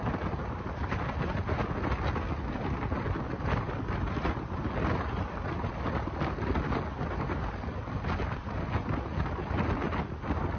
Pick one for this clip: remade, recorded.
recorded